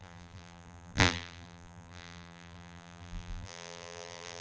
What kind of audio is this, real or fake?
fake